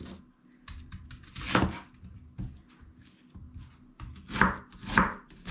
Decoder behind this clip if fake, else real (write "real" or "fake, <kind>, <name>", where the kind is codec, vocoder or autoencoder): real